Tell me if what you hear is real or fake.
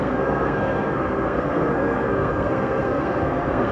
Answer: fake